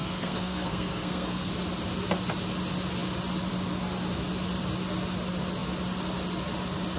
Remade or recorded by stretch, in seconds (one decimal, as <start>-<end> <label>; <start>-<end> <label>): 0.0-1.5 remade; 1.5-7.0 recorded